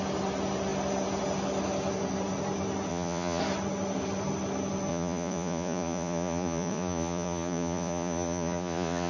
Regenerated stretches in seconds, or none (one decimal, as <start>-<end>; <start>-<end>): 2.9-3.4; 4.9-9.1